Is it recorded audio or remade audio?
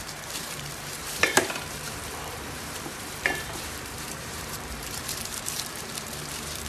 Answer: remade